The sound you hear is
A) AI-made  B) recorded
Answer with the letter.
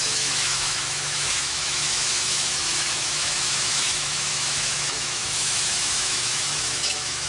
A